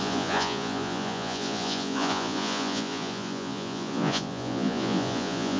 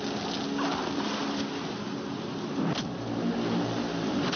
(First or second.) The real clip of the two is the second